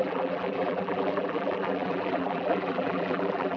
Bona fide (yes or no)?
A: no